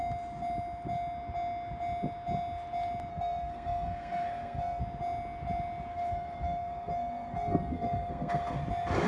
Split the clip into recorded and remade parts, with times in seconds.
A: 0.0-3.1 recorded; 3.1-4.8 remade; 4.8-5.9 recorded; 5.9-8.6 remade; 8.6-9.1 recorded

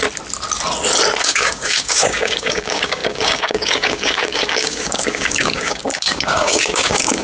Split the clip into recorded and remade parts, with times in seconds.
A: 0.0-1.2 recorded; 1.2-7.2 remade

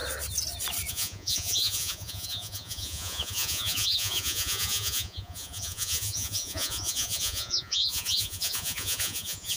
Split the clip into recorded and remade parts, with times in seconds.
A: 0.0-0.9 recorded; 0.9-9.6 remade

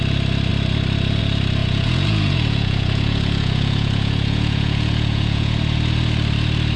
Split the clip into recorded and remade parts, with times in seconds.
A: 0.0-1.6 recorded; 1.6-5.6 remade; 5.6-6.8 recorded